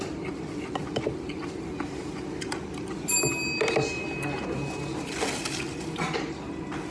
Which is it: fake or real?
real